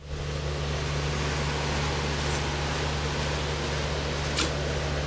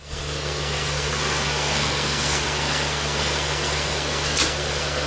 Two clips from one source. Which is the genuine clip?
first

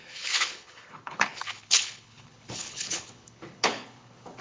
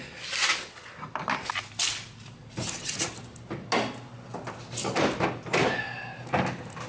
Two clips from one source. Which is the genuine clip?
second